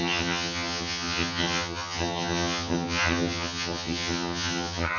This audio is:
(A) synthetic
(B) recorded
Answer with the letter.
A